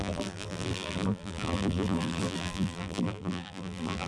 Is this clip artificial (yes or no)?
yes